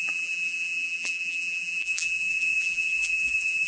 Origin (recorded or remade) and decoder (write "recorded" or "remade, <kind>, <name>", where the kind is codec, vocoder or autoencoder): remade, vocoder, BigVGAN v2